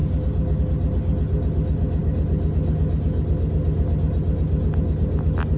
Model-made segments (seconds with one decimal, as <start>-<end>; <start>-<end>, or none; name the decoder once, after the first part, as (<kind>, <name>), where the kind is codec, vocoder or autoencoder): none